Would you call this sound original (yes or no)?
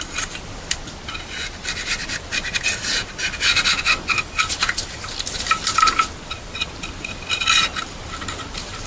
yes